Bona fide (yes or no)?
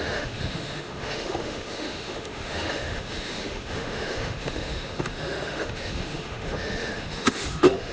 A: no